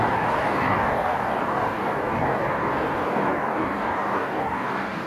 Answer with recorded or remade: remade